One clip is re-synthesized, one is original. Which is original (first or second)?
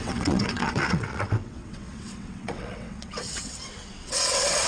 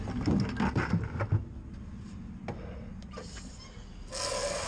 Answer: second